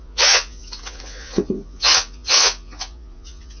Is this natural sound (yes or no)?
no